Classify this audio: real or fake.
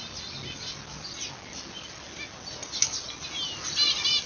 real